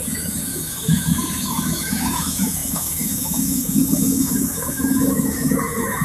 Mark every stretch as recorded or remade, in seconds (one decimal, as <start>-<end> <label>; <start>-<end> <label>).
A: 0.0-6.0 remade